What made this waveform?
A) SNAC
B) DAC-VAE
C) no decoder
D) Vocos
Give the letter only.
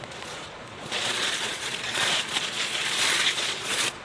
D